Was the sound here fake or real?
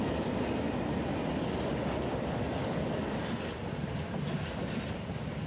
real